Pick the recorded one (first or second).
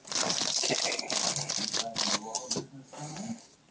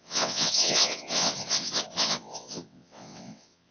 first